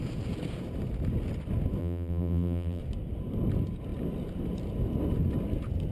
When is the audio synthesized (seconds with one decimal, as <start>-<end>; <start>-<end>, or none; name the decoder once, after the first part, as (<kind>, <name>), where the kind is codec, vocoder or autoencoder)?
1.8-2.8 (vocoder, BigVGAN v2)